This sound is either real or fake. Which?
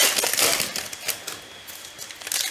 real